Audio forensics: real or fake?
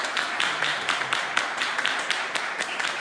fake